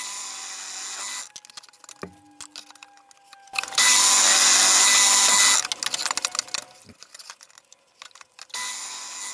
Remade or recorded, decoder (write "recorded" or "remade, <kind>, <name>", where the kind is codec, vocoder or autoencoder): recorded